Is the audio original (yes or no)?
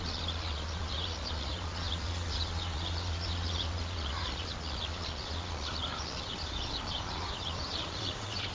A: no